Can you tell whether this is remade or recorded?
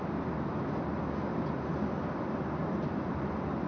recorded